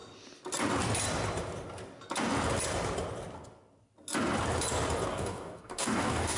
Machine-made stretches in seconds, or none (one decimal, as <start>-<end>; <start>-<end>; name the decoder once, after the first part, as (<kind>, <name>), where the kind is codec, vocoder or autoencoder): 5.1-6.4 (codec, DAC)